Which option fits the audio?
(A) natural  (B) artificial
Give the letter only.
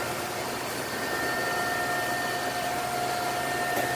A